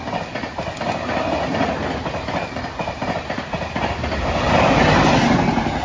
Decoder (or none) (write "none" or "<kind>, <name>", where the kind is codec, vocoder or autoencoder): none